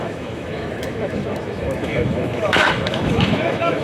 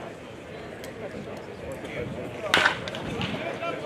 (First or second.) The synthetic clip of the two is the first